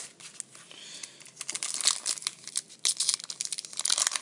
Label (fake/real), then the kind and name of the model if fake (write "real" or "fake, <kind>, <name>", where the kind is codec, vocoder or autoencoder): real